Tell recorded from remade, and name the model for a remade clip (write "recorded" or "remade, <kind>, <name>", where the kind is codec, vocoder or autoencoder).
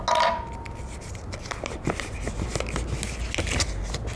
recorded